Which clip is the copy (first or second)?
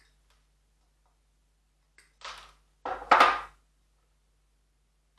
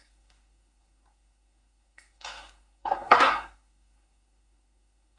second